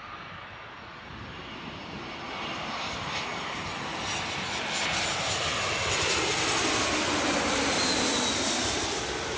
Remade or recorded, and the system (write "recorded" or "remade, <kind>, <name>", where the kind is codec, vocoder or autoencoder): recorded